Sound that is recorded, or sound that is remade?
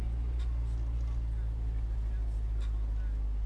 recorded